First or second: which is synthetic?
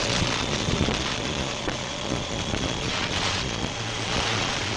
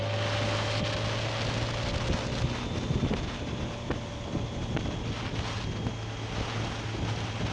first